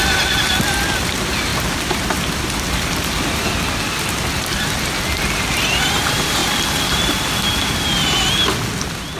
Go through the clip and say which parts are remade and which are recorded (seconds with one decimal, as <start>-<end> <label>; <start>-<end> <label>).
0.0-4.5 recorded; 4.5-5.2 remade; 5.2-6.4 recorded; 6.4-7.1 remade; 7.1-9.2 recorded

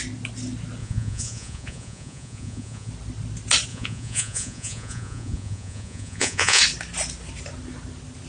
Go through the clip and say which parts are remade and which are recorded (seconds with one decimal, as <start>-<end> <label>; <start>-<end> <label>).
0.0-0.8 recorded; 0.8-2.9 remade; 2.9-3.7 recorded; 3.7-6.6 remade; 6.6-8.3 recorded

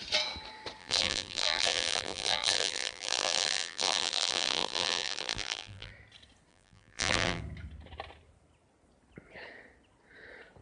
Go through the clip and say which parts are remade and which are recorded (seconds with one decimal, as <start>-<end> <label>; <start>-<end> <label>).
0.0-0.8 recorded; 0.8-5.9 remade; 5.9-6.5 recorded; 6.5-7.4 remade; 7.4-10.6 recorded

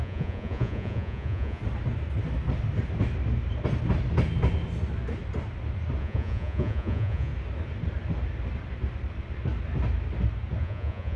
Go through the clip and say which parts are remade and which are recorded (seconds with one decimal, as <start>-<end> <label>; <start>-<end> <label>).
0.0-1.6 remade; 1.6-6.0 recorded; 6.0-7.3 remade; 7.3-10.6 recorded; 10.6-11.2 remade

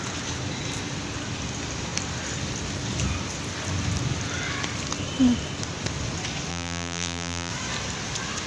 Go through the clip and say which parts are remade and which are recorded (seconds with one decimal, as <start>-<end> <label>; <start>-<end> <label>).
0.0-6.5 recorded; 6.5-7.5 remade; 7.5-8.5 recorded